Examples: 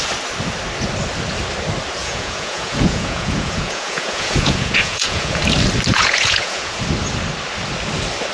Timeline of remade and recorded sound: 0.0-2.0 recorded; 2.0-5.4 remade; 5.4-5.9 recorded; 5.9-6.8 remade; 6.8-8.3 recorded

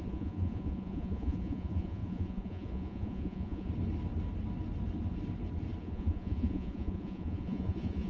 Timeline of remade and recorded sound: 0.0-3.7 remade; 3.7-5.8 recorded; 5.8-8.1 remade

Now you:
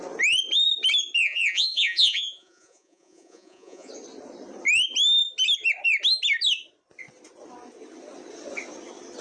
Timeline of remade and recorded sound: 0.0-1.2 recorded; 1.2-3.9 remade; 3.9-9.2 recorded

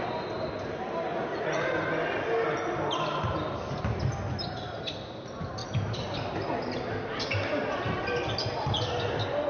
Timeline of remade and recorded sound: 0.0-1.1 recorded; 1.1-1.7 remade; 1.7-9.5 recorded

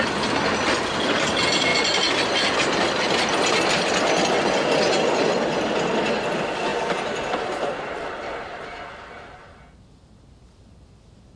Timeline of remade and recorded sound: 0.0-11.4 recorded

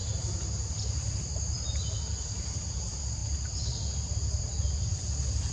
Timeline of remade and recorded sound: 0.0-5.5 recorded

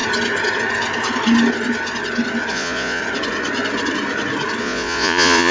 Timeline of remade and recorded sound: 0.0-2.5 recorded; 2.5-3.0 remade; 3.0-4.6 recorded; 4.6-5.5 remade